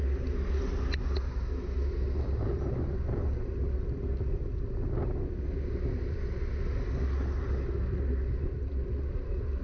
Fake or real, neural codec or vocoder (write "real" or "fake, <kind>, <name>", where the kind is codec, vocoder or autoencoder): real